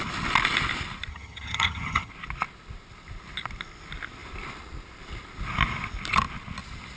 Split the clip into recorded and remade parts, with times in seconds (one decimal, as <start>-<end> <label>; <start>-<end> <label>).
0.0-1.1 recorded; 1.1-2.1 remade; 2.1-7.0 recorded